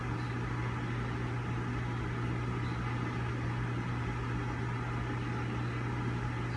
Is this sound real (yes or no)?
yes